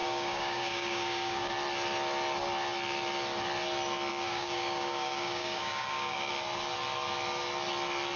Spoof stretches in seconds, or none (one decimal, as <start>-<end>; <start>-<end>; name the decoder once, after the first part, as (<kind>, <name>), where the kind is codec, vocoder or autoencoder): 0.0-1.5 (codec, DAC); 4.1-6.3